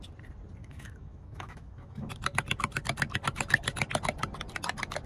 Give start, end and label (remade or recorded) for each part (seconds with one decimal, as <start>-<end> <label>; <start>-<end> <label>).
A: 0.0-0.6 recorded; 0.6-2.1 remade; 2.1-5.1 recorded